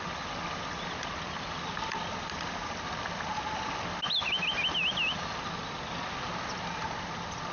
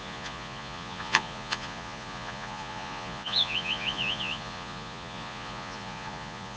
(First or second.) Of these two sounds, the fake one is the second